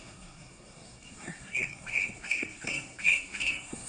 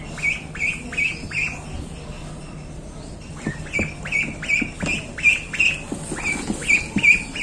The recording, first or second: second